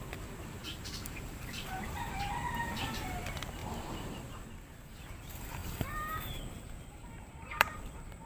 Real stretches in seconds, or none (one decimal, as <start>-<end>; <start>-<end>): 0.0-0.6; 3.2-5.6